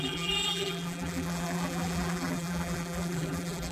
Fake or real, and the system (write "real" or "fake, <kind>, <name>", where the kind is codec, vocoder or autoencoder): fake, vocoder, BigVGAN v2